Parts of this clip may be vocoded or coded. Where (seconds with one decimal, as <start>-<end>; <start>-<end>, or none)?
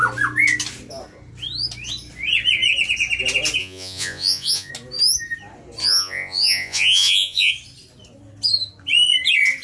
3.6-4.7; 5.8-7.5